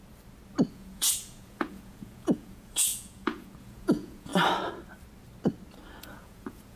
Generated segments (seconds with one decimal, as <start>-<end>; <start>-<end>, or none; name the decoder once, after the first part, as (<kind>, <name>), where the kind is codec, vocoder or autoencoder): 0.7-4.3 (vocoder, Vocos); 6.0-6.8